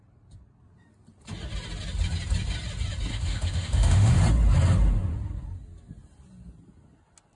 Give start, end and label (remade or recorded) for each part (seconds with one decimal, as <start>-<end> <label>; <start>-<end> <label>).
0.0-3.1 recorded; 3.1-4.2 remade; 4.2-7.4 recorded